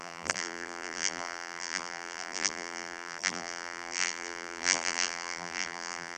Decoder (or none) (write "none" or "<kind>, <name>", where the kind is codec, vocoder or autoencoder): vocoder, BigVGAN v2